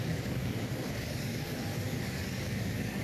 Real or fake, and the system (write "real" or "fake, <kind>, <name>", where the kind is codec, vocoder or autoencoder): fake, codec, DAC